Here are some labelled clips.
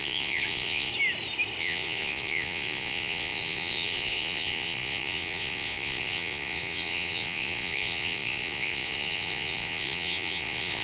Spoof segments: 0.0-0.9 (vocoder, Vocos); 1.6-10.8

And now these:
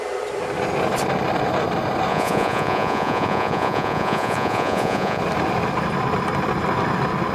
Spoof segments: 2.1-5.2 (vocoder, Vocos)

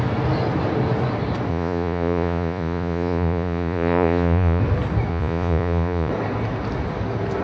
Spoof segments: 1.5-4.6 (vocoder, Vocos); 5.1-6.1

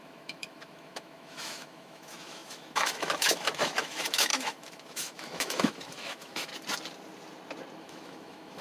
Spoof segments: 0.0-6.5 (autoencoder, DAC-VAE); 7.8-8.6

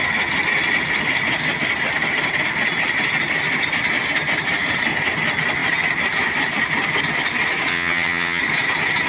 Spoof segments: 7.7-8.4 (vocoder, HiFi-GAN)

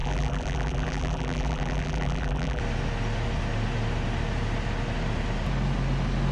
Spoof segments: 0.0-2.6 (vocoder, BigVGAN v2)

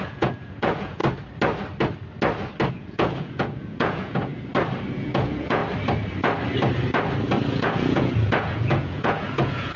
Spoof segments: 0.0-1.0 (vocoder, Vocos); 2.7-4.3; 4.9-5.6; 7.5-9.8

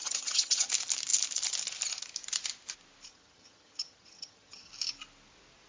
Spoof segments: 0.0-0.7 (vocoder, HiFi-GAN); 3.1-4.7